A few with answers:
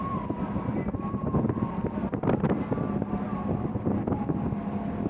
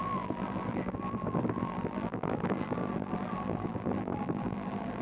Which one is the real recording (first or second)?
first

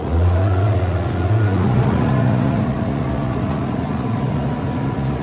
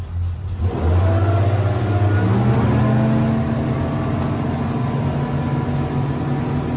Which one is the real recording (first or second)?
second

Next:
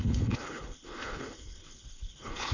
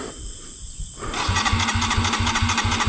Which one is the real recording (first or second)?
second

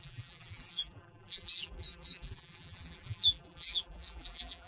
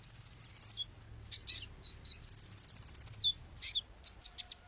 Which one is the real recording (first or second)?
second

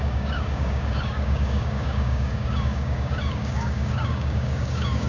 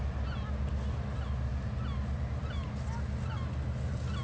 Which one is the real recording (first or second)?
second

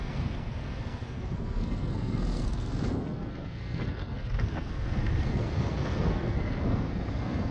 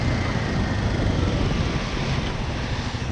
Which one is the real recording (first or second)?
second